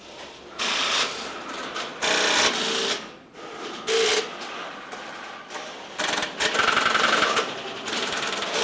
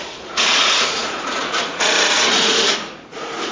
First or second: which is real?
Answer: first